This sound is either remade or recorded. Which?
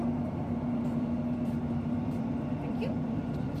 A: remade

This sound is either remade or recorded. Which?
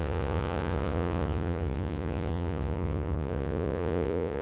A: remade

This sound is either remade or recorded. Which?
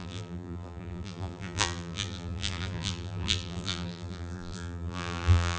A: remade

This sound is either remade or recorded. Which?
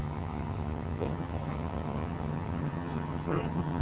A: remade